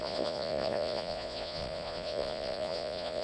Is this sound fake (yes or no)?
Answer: yes